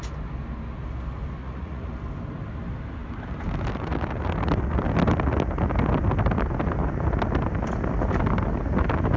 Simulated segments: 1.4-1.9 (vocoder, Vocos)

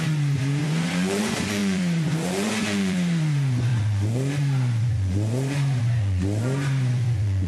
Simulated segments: 0.0-7.5 (vocoder, Vocos)